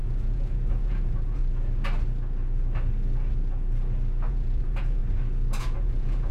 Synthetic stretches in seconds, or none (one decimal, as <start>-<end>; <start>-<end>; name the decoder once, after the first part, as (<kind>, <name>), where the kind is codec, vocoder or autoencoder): 0.0-1.4 (vocoder, Vocos); 4.3-5.0; 5.6-6.3